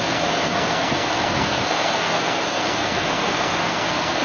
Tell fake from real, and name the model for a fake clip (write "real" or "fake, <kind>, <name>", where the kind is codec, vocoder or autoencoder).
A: fake, codec, SNAC